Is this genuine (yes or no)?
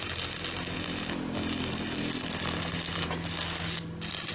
yes